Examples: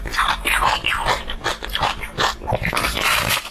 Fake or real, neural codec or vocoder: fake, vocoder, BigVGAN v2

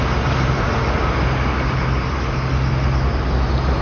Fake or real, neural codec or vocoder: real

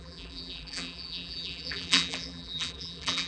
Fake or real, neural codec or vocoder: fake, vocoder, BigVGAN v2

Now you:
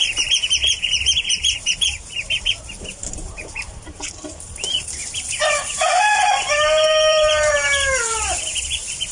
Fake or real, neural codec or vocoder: fake, vocoder, BigVGAN v2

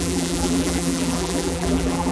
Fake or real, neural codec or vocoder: fake, vocoder, BigVGAN v2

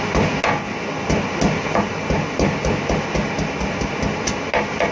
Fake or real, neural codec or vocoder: real